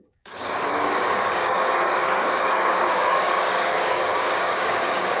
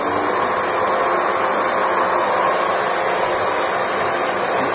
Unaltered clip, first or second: second